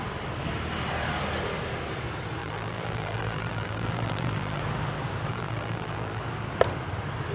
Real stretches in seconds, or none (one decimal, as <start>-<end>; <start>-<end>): 0.0-2.4; 4.6-5.3; 6.2-7.3